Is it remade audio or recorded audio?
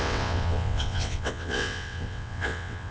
remade